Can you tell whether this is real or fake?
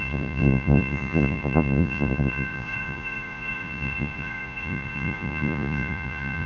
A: fake